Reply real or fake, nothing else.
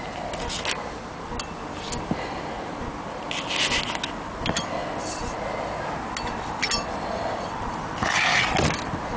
real